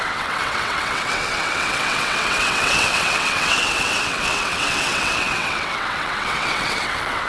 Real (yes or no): no